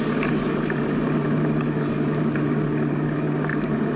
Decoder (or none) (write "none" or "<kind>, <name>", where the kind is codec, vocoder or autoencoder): none